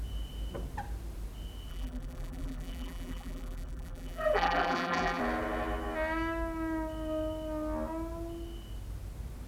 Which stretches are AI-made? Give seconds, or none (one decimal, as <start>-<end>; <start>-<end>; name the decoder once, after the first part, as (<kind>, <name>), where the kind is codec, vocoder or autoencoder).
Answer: 1.7-5.2 (vocoder, BigVGAN v2)